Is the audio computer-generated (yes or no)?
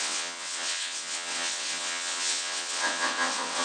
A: yes